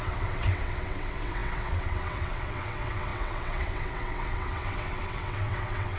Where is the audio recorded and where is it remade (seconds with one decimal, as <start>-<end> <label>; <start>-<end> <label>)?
0.0-6.0 remade